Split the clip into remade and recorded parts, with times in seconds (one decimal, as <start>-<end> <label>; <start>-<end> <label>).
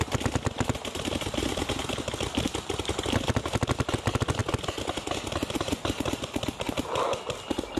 0.0-7.8 recorded